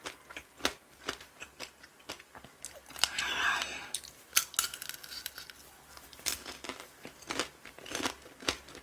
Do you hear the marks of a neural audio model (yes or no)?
no